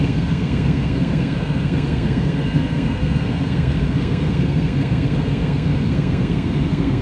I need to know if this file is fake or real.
fake